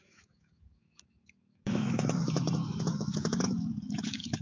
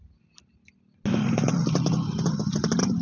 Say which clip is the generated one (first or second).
first